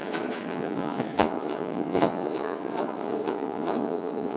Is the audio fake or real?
fake